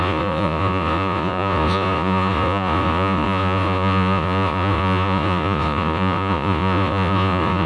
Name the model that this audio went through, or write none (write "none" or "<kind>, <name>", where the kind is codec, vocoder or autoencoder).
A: vocoder, Vocos